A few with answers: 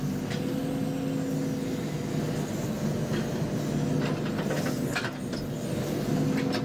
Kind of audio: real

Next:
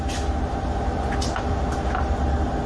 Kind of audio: real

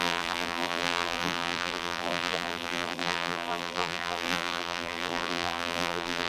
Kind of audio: fake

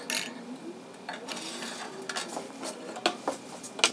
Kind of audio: real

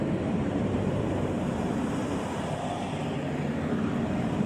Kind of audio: fake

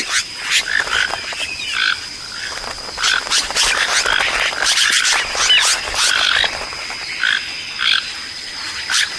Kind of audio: real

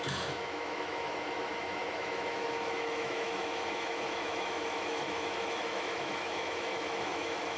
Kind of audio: fake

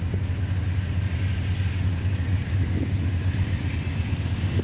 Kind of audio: real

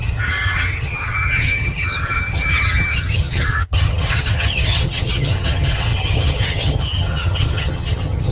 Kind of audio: fake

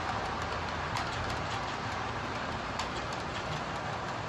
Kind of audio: fake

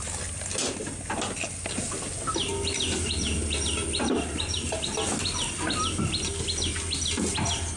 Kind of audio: real